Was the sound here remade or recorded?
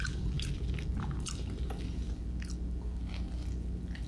recorded